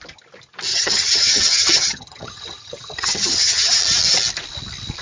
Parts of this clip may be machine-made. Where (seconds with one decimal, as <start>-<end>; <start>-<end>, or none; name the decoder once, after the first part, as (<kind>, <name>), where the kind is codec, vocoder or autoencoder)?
0.7-3.7 (vocoder, HiFi-GAN)